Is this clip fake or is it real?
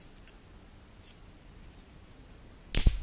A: real